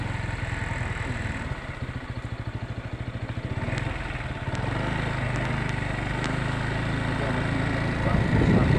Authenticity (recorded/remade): recorded